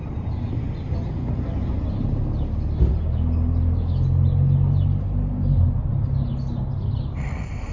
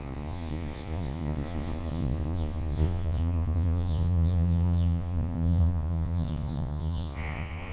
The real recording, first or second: first